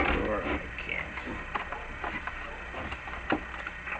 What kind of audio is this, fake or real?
real